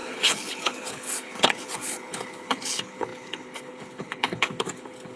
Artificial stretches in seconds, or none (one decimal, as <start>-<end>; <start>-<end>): 0.0-5.2